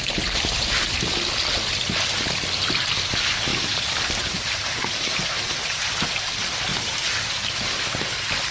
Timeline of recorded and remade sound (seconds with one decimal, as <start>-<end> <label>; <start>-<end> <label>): 0.0-3.5 recorded; 3.5-5.9 remade; 5.9-6.7 recorded; 6.7-7.5 remade; 7.5-8.5 recorded